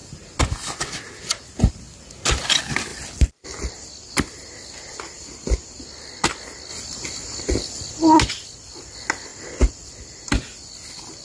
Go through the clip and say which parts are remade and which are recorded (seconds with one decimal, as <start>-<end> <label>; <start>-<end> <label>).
0.0-2.9 recorded; 2.9-4.0 remade; 4.0-6.7 recorded; 6.7-8.2 remade; 8.2-9.3 recorded; 9.3-9.9 remade; 9.9-11.2 recorded